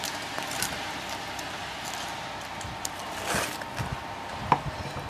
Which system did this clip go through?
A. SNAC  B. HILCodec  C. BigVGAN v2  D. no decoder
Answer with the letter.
D